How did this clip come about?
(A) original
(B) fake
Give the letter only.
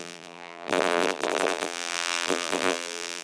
B